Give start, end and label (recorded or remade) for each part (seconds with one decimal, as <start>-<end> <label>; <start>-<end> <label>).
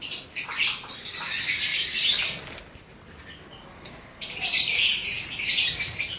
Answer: 0.0-3.7 recorded; 3.7-6.2 remade